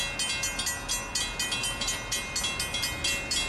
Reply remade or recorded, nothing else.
recorded